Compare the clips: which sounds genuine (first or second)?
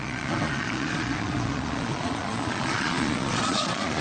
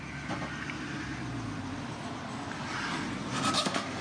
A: second